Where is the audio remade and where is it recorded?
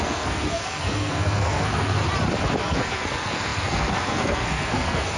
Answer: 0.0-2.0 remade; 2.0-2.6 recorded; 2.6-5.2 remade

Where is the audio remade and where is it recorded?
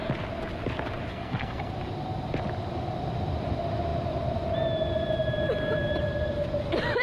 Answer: 0.0-1.1 recorded; 1.1-1.7 remade; 1.7-7.0 recorded